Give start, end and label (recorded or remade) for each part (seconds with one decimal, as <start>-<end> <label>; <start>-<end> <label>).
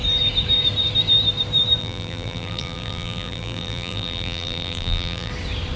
0.0-1.8 recorded; 1.8-5.3 remade; 5.3-5.8 recorded